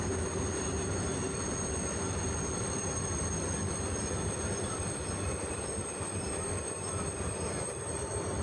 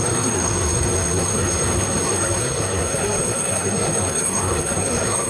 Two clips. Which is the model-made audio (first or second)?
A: second